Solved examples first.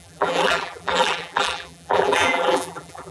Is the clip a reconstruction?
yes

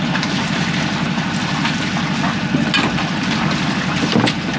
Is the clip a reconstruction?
no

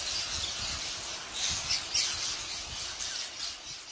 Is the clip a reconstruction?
no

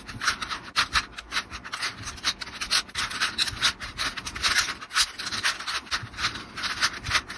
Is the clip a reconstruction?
no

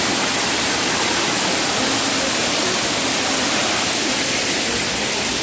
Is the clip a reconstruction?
no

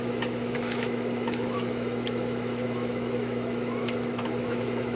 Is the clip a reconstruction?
yes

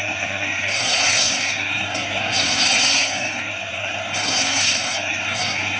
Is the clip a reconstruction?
yes